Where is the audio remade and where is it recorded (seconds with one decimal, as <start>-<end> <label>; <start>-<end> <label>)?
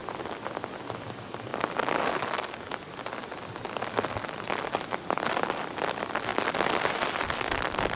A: 0.0-8.0 recorded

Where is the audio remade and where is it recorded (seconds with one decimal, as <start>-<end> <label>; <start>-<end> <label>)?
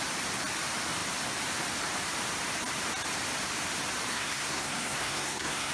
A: 0.0-4.1 recorded; 4.1-5.7 remade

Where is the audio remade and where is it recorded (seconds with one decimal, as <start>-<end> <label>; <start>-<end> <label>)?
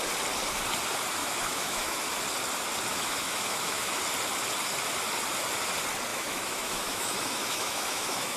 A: 0.0-1.2 recorded; 1.2-2.0 remade; 2.0-2.9 recorded; 2.9-4.0 remade; 4.0-6.1 recorded; 6.1-8.4 remade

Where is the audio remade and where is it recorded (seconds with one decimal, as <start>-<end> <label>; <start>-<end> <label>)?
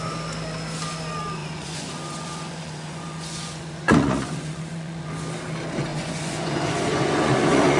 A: 0.0-1.4 recorded; 1.4-5.1 remade; 5.1-5.9 recorded; 5.9-7.8 remade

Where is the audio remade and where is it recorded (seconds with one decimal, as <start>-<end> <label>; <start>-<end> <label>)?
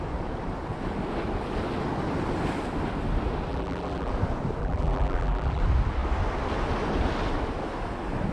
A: 0.0-3.5 recorded; 3.5-4.1 remade; 4.1-4.6 recorded; 4.6-5.6 remade; 5.6-8.3 recorded